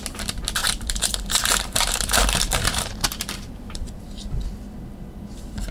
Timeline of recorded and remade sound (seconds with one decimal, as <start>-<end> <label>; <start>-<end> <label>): 0.0-0.6 recorded; 0.6-4.0 remade; 4.0-5.7 recorded